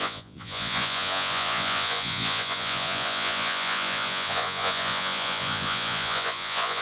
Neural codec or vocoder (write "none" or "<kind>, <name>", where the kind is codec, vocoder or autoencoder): vocoder, Vocos